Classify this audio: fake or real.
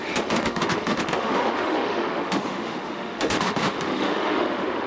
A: fake